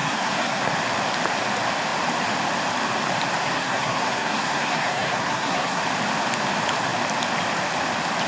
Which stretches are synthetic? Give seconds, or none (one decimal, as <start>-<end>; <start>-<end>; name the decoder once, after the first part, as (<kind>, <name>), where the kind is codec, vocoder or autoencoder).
0.0-0.7 (codec, SNAC); 3.4-5.8